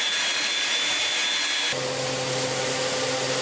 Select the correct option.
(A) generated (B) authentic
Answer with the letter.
B